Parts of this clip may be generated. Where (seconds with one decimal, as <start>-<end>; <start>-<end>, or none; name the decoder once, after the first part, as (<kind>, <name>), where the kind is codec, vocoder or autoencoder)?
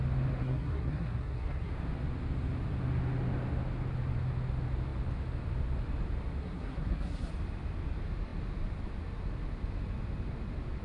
0.4-1.7 (codec, SNAC); 6.4-7.3